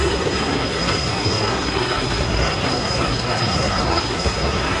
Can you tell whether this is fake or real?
fake